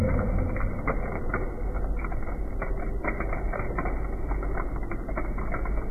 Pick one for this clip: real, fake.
real